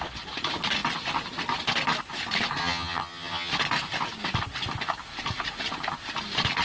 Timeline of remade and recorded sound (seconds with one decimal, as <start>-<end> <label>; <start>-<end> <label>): 0.0-2.6 recorded; 2.6-3.5 remade; 3.5-6.6 recorded